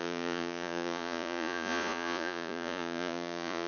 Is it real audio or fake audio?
fake